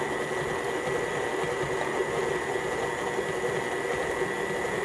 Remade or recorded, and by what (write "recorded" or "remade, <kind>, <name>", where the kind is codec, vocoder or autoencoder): recorded